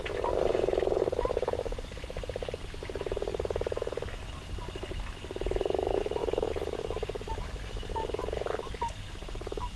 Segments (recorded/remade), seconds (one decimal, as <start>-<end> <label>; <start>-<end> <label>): 0.0-9.8 recorded